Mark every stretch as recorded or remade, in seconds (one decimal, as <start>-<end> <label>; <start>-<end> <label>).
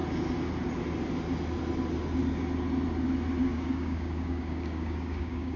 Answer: 0.0-3.4 recorded; 3.4-5.6 remade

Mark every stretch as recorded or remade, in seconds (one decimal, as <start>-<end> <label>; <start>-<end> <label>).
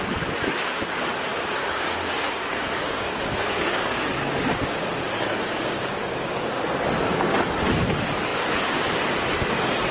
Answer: 0.0-1.3 recorded; 1.3-6.4 remade; 6.4-9.9 recorded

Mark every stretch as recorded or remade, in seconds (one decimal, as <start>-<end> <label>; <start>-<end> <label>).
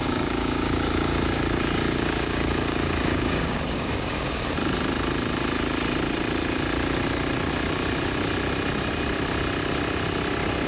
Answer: 0.0-4.5 remade; 4.5-10.7 recorded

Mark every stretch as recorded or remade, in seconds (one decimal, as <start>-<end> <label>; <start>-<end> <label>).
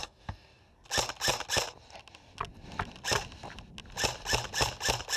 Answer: 0.0-0.6 remade; 0.6-5.2 recorded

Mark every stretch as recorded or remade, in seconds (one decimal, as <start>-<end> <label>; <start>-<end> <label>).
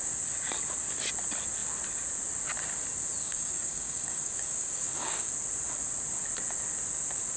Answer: 0.0-3.2 recorded; 3.2-5.3 remade; 5.3-7.4 recorded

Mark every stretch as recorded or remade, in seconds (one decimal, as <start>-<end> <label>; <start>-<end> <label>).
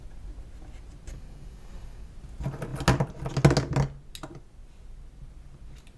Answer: 0.0-1.1 recorded; 1.1-2.1 remade; 2.1-6.0 recorded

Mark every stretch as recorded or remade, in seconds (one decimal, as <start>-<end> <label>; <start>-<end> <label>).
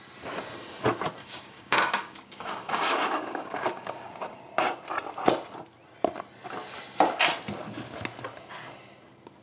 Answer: 0.0-1.2 recorded; 1.2-4.5 remade; 4.5-9.4 recorded